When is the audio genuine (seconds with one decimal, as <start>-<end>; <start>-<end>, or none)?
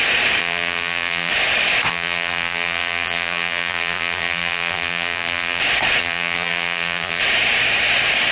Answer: 0.0-0.4; 1.3-1.9; 5.6-6.0; 7.2-8.3